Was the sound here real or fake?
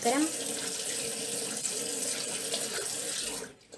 real